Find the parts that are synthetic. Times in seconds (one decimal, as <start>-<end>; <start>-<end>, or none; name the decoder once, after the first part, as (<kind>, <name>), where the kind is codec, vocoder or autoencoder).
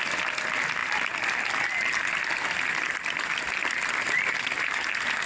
none